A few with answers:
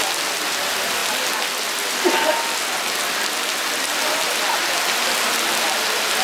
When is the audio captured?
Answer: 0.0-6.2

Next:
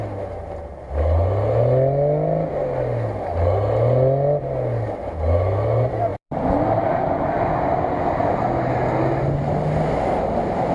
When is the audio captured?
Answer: 0.0-6.1; 7.3-10.7

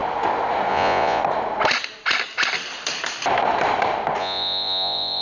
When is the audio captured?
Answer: 0.0-0.7; 1.2-4.2